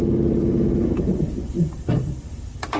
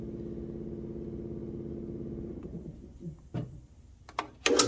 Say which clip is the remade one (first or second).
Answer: first